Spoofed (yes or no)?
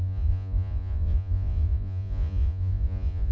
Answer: yes